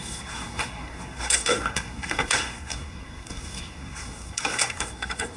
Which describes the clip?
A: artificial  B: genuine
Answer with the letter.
A